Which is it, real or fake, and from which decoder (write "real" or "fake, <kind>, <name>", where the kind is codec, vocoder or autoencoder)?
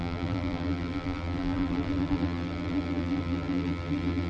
fake, vocoder, BigVGAN v2